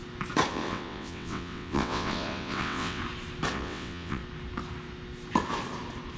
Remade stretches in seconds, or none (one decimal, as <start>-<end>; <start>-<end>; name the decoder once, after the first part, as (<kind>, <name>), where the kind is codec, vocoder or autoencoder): 0.5-3.0 (vocoder, WaveNeXt); 3.5-4.2